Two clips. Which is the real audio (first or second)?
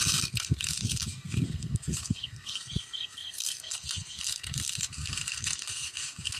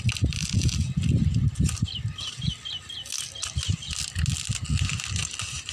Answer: second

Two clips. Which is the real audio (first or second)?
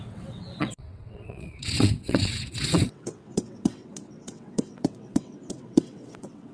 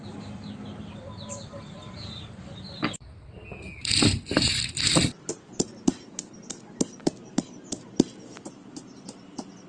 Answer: second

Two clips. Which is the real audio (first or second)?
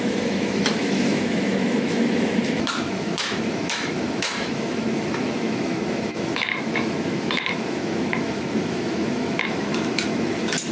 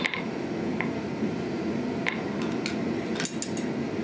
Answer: second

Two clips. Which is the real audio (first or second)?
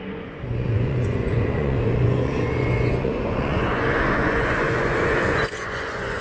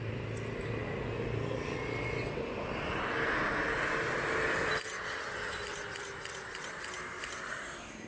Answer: second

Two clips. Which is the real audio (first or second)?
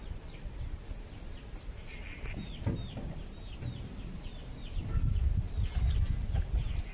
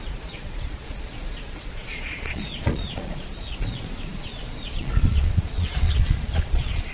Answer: first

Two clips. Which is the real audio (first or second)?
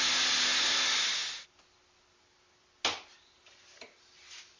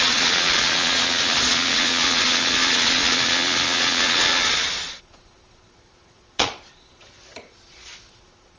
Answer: first